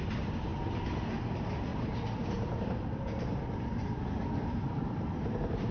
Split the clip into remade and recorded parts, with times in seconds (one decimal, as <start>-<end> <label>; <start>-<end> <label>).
0.0-1.7 recorded; 1.7-5.1 remade; 5.1-5.7 recorded